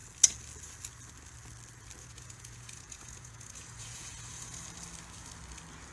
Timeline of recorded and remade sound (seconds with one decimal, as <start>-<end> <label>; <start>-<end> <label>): 0.0-2.0 recorded; 2.0-4.6 remade; 4.6-5.9 recorded